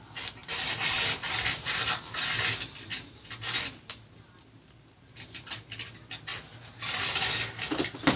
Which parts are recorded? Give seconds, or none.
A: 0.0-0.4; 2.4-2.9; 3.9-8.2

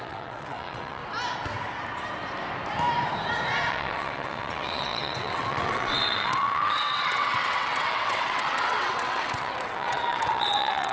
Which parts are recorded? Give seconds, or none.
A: 1.0-3.7